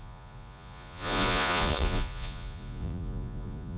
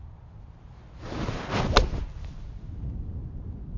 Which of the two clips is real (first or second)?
second